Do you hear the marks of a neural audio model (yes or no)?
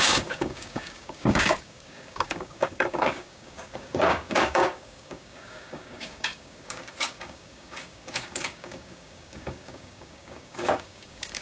yes